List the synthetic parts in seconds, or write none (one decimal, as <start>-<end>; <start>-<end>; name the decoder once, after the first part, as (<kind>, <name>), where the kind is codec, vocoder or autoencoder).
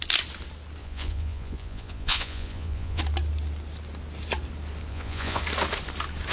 0.8-3.0 (vocoder, Vocos); 4.9-5.4